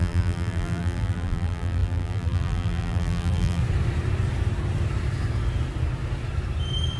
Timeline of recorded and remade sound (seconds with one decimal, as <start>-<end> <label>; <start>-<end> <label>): 0.0-3.6 remade; 3.6-7.0 recorded